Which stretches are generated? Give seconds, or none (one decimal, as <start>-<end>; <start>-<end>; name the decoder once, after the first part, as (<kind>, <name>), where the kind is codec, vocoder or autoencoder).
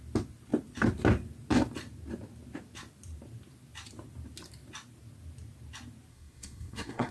6.1-7.1 (codec, SNAC)